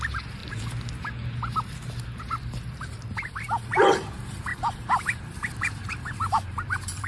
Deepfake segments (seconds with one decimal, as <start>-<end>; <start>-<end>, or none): 4.5-7.1